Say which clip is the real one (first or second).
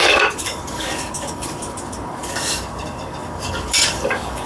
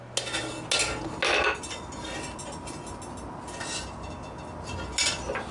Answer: second